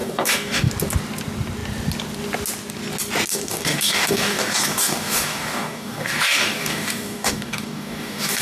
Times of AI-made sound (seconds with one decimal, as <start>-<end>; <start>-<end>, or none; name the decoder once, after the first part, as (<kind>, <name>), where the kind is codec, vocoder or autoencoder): 0.0-0.7 (codec, DAC); 3.3-8.4